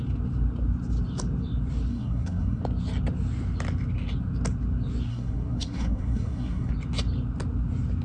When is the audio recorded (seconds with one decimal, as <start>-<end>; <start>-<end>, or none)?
0.0-1.9; 2.6-5.1; 6.7-8.0